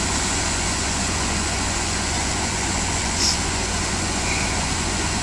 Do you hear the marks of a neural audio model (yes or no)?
yes